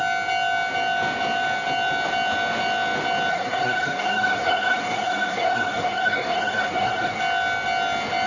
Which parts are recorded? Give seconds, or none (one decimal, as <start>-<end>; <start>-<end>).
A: 0.0-3.3; 7.2-8.3

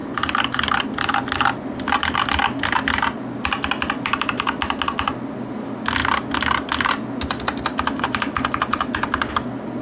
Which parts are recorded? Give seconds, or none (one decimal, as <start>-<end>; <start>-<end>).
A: 4.2-6.0; 9.3-9.8

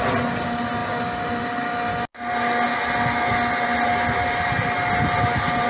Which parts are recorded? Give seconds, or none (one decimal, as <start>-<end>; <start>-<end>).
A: 0.0-5.7

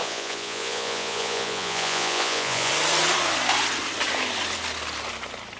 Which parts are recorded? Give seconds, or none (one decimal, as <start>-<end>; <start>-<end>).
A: 2.7-5.6

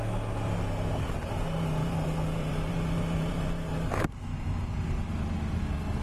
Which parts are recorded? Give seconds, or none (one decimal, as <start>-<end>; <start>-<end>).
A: 0.0-1.8; 4.1-6.0